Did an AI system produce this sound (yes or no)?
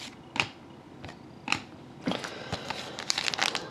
no